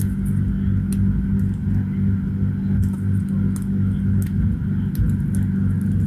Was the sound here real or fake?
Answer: real